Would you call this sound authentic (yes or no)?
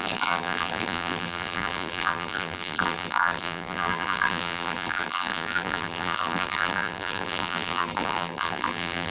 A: no